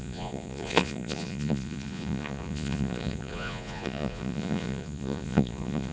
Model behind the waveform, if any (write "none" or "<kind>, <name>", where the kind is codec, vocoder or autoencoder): vocoder, Vocos